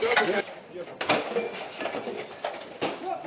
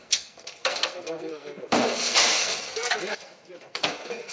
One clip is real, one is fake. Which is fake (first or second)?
second